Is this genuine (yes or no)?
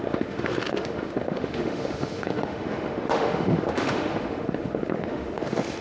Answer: no